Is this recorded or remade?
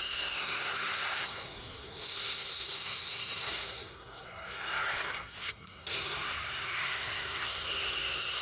remade